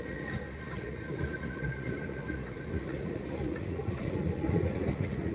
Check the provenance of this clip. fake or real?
fake